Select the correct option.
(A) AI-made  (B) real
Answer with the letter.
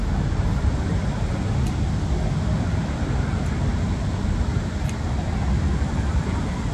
B